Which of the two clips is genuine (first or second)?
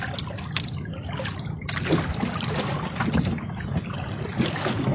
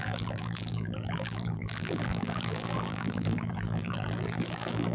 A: first